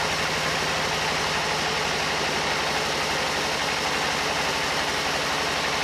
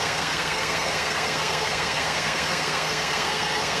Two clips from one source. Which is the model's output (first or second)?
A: second